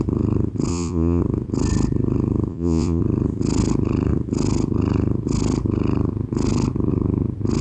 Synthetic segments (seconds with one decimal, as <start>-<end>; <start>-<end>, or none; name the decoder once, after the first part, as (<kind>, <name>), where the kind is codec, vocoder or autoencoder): 0.7-1.2 (vocoder, Vocos); 2.5-3.0